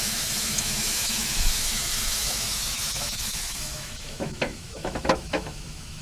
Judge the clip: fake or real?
fake